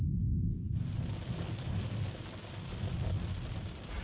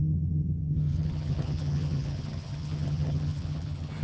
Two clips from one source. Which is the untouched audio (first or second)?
first